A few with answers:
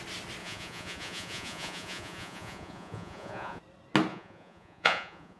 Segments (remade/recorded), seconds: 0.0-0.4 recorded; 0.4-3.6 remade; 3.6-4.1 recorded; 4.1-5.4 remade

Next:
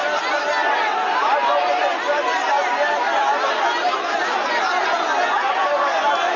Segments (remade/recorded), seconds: 0.0-6.4 recorded

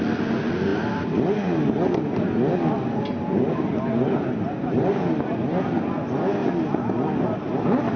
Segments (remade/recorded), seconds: 0.0-8.0 recorded